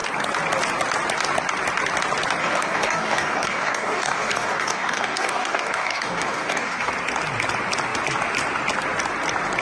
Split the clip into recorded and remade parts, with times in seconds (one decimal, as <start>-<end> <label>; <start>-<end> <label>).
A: 0.0-2.4 recorded; 2.4-6.9 remade; 6.9-9.6 recorded